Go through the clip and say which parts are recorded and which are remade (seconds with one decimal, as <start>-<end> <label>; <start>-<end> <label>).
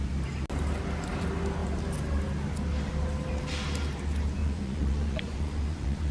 0.0-4.4 recorded; 4.4-6.1 remade